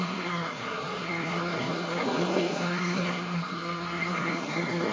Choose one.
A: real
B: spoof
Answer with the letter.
B